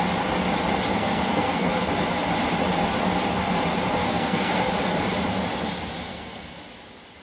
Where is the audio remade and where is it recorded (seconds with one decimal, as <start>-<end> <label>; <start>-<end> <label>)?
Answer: 0.0-0.9 recorded; 0.9-1.7 remade; 1.7-4.0 recorded; 4.0-4.7 remade; 4.7-6.1 recorded; 6.1-6.6 remade; 6.6-7.2 recorded